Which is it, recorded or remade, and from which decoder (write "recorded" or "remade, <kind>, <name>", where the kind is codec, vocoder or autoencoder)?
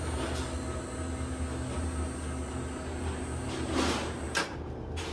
recorded